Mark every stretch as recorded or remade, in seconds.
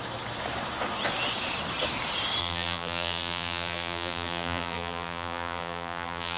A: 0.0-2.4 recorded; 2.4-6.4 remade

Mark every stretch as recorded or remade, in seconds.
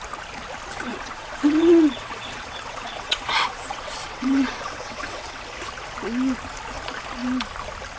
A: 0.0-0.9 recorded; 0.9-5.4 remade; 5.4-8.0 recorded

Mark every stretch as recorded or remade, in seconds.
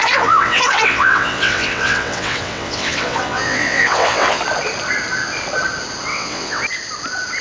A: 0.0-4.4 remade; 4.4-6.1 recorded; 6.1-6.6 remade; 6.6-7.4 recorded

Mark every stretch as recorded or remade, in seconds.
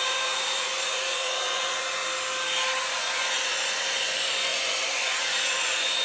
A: 0.0-2.0 remade; 2.0-2.8 recorded; 2.8-6.0 remade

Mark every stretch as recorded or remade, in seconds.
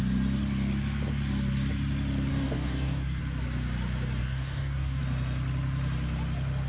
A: 0.0-2.3 recorded; 2.3-3.2 remade; 3.2-4.2 recorded; 4.2-5.0 remade; 5.0-6.7 recorded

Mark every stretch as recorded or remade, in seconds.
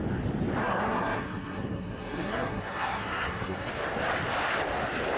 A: 0.0-0.6 recorded; 0.6-3.7 remade; 3.7-5.2 recorded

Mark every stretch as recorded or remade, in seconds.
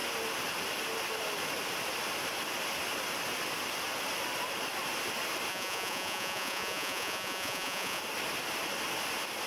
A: 0.0-5.5 recorded; 5.5-8.0 remade; 8.0-9.5 recorded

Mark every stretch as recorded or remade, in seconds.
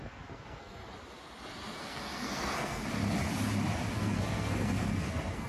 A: 0.0-0.8 remade; 0.8-1.8 recorded; 1.8-2.8 remade; 2.8-3.9 recorded; 3.9-5.5 remade